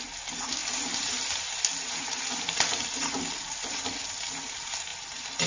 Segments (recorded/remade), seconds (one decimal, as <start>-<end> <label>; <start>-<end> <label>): 0.0-5.5 recorded